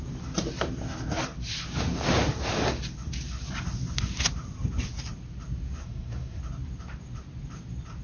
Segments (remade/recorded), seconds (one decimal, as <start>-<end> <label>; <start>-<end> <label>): 0.0-5.8 recorded; 5.8-6.4 remade; 6.4-8.0 recorded

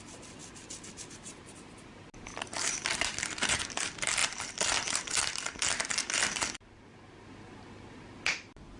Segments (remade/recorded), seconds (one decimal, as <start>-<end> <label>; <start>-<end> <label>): 0.0-8.8 recorded

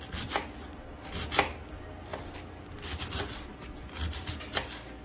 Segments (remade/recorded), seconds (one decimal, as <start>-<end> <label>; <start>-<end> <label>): 0.0-5.0 recorded

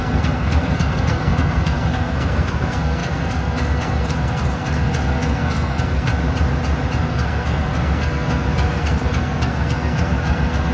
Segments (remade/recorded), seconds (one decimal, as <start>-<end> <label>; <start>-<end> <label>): 0.0-6.1 remade; 6.1-7.0 recorded; 7.0-10.7 remade

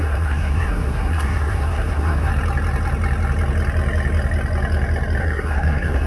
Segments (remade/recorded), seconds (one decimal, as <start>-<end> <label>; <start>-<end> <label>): 0.0-2.3 remade; 2.3-5.2 recorded; 5.2-6.1 remade